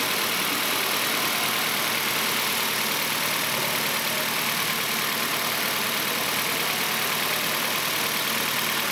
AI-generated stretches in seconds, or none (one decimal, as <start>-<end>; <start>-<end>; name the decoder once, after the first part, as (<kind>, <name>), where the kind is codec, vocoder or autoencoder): none